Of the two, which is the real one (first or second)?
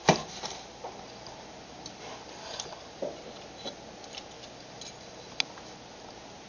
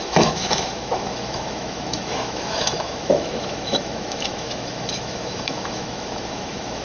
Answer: first